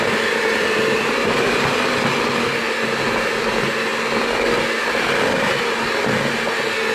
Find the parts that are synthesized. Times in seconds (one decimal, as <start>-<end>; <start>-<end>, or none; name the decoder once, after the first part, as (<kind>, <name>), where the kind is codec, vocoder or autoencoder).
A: 0.5-1.5 (vocoder, BigVGAN v2)